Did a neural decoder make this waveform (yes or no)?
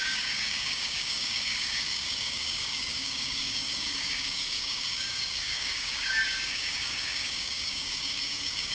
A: yes